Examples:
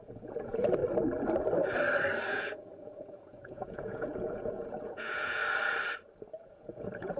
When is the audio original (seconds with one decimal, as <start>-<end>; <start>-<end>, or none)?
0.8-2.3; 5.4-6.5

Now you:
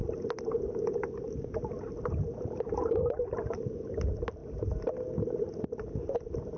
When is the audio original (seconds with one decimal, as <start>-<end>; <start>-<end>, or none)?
0.0-6.6

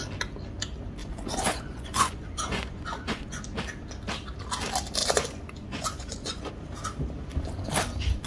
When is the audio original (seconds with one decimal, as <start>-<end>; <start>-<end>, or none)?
0.0-1.0; 3.4-5.0; 6.5-8.3

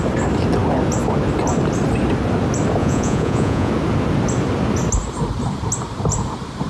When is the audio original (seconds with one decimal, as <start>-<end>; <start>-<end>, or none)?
0.0-2.8; 3.7-6.7

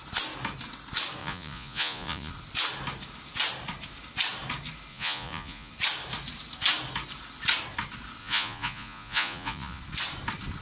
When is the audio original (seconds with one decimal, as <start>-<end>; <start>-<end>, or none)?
0.0-1.2; 2.3-4.9; 5.7-8.2; 9.8-10.6

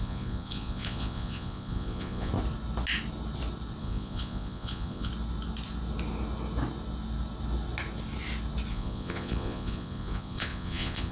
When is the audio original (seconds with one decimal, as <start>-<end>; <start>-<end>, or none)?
2.3-3.8; 5.1-8.7

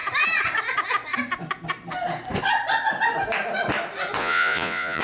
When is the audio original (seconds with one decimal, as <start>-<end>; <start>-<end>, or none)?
0.0-4.2

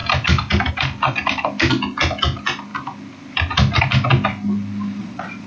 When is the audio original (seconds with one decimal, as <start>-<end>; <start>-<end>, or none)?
0.0-5.0